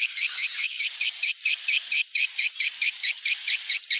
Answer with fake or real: fake